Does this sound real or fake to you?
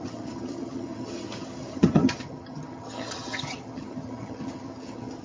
fake